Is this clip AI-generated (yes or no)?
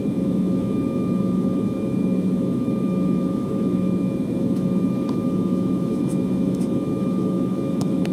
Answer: yes